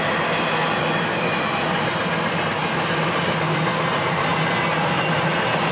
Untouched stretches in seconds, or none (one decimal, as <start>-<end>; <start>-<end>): 0.0-5.7